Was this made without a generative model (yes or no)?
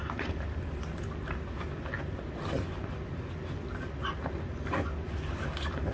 yes